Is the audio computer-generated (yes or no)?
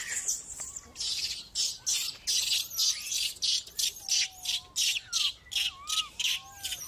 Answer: no